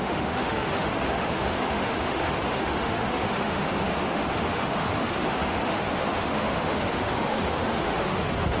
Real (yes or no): no